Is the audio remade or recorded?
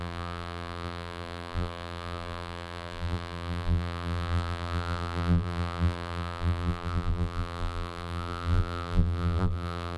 remade